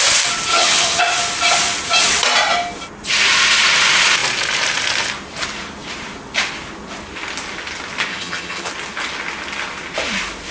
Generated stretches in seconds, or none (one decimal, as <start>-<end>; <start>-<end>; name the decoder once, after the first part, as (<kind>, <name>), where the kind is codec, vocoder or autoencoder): 0.5-1.0 (vocoder, HiFi-GAN); 8.1-8.7

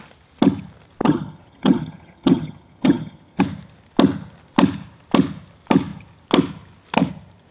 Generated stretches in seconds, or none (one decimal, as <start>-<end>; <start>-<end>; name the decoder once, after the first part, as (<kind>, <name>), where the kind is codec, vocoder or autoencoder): 1.0-3.4 (vocoder, HiFi-GAN)

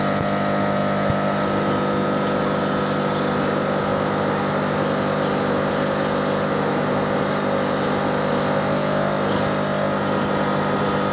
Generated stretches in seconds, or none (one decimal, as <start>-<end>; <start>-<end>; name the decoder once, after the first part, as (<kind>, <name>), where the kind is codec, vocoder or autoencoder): none

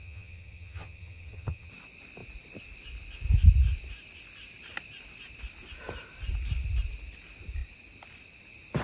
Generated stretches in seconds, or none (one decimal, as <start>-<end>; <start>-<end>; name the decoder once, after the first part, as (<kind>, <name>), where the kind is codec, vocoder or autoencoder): 0.0-1.7 (vocoder, HiFi-GAN)

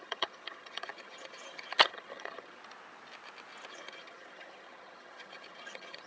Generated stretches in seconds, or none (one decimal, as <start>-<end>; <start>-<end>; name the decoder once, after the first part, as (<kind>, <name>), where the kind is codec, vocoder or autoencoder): 0.0-2.6 (vocoder, HiFi-GAN); 3.7-6.1

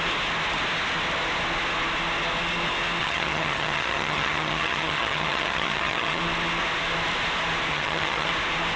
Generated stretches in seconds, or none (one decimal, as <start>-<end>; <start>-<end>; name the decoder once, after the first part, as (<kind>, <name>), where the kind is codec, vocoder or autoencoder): 3.0-6.2 (vocoder, HiFi-GAN); 7.7-8.3

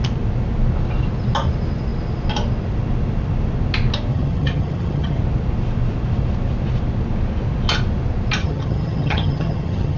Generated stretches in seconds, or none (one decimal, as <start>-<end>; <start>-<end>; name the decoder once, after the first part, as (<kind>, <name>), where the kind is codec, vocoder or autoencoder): 4.1-5.2 (vocoder, HiFi-GAN); 8.4-10.0

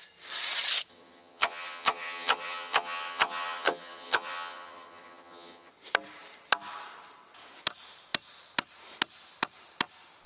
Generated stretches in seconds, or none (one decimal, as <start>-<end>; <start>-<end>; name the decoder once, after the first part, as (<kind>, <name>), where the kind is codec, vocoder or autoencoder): 0.9-5.7 (vocoder, HiFi-GAN)